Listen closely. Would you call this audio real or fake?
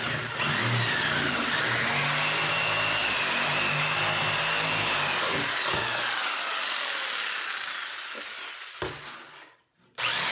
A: real